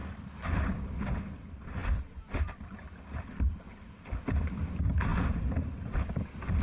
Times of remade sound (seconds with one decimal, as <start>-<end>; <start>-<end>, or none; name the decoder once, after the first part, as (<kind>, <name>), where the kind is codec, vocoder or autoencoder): 0.0-0.8 (vocoder, BigVGAN v2); 1.8-4.5; 5.1-5.6